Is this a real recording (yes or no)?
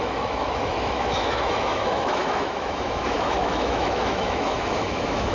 no